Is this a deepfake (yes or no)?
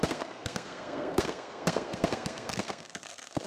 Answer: yes